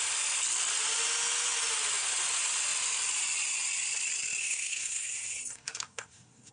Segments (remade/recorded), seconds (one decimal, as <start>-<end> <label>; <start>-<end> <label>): 0.0-4.4 recorded; 4.4-6.5 remade